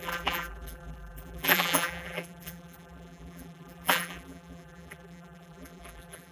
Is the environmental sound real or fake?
fake